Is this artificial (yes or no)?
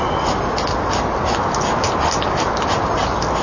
no